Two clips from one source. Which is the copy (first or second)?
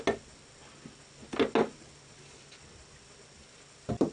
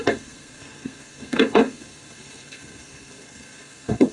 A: second